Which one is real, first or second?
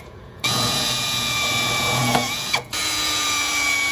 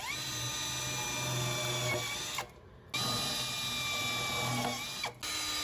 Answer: second